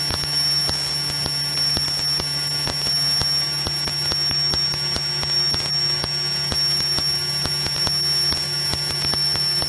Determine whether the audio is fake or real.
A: real